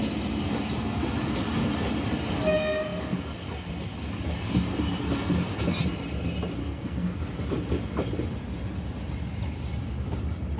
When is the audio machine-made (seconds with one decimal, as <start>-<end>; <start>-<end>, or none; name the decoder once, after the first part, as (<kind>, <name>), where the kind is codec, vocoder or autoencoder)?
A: 6.6-7.2 (codec, SNAC)

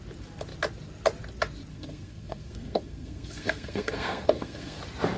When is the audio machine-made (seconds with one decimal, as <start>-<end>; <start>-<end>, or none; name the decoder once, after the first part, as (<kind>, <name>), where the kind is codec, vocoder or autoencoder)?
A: 1.7-4.8 (codec, SNAC)

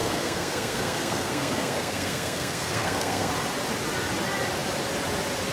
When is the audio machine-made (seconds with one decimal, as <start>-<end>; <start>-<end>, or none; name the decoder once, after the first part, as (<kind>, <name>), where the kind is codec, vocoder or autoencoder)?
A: 0.0-3.3 (codec, SNAC)

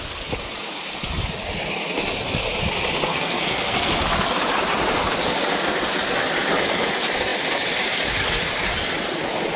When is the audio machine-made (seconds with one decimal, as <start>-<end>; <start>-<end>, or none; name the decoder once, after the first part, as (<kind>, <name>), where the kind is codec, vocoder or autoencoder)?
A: 3.1-3.9 (codec, SNAC)

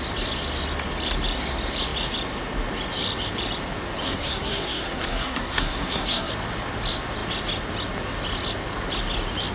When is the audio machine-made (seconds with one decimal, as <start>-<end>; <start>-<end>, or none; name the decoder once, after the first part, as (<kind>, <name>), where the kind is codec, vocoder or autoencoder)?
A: 4.0-6.3 (codec, SNAC)

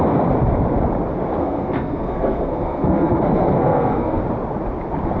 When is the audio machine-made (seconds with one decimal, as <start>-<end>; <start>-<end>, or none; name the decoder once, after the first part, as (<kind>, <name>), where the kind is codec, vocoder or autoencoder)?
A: 1.4-4.2 (codec, SNAC)